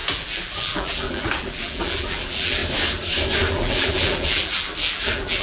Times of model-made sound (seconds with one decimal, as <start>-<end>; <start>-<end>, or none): 0.0-2.6; 3.5-5.4